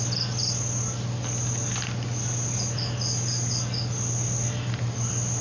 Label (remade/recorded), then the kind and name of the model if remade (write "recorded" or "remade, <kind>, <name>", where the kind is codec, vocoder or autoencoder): recorded